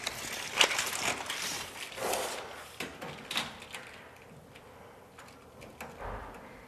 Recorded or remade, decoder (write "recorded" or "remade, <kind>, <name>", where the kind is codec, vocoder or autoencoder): recorded